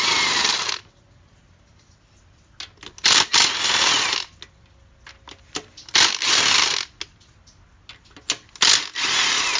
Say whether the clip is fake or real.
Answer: real